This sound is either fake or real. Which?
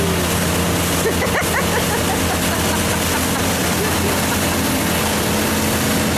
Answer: real